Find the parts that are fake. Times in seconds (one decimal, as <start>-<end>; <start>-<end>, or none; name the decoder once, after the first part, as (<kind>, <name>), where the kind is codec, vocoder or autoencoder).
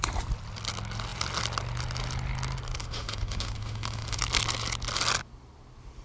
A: 2.8-4.2 (autoencoder, DAC-VAE)